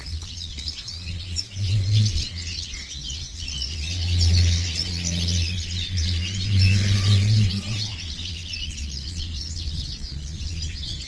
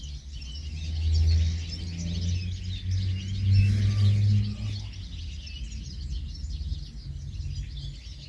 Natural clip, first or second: second